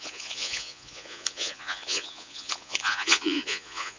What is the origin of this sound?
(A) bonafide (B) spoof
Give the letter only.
B